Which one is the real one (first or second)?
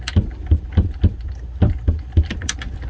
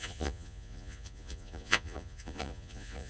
first